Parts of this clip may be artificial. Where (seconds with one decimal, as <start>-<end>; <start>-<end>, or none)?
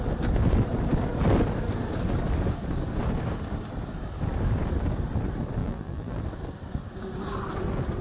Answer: 5.6-6.2